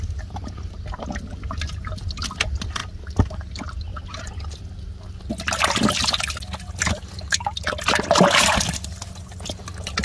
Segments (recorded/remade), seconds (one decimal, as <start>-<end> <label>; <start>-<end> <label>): 0.0-10.0 recorded